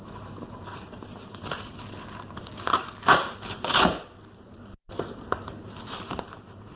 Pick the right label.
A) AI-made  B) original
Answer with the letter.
A